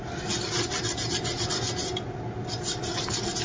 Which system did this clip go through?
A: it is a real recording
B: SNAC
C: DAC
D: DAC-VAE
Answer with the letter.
A